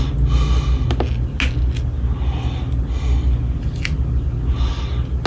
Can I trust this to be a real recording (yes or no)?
yes